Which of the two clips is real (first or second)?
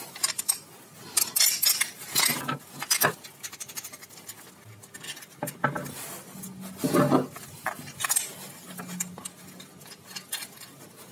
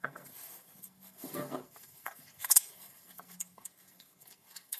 first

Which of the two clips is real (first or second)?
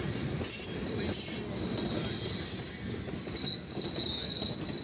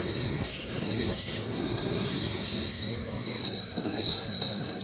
first